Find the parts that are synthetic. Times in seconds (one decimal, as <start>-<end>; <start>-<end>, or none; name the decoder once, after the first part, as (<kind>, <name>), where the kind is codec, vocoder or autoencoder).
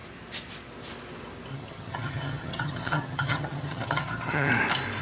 1.5-4.5 (vocoder, HiFi-GAN)